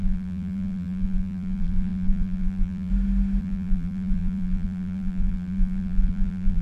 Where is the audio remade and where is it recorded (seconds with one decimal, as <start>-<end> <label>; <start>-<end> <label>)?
0.0-2.9 remade; 2.9-3.4 recorded; 3.4-6.6 remade